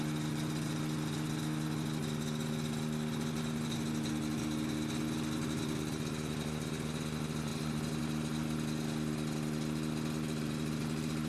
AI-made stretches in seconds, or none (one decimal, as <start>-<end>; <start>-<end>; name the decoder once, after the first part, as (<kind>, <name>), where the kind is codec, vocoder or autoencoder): none